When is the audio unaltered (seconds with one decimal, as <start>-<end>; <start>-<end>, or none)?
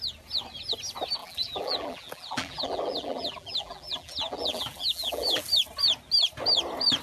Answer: 0.0-1.2; 5.4-7.0